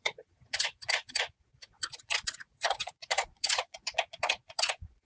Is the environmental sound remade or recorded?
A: remade